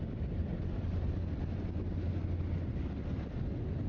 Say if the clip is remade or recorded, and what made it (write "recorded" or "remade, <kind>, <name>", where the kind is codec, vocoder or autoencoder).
recorded